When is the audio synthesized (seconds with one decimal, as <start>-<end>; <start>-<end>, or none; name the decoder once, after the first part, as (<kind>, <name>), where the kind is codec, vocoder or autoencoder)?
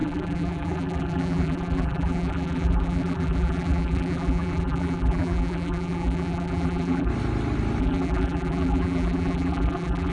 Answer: 0.0-7.1 (vocoder, BigVGAN v2); 7.8-10.1